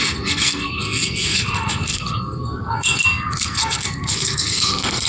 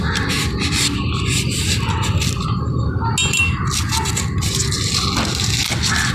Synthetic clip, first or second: first